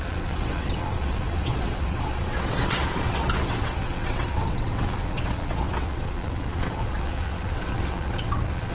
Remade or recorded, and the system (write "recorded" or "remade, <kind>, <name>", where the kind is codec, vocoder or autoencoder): remade, vocoder, WaveNeXt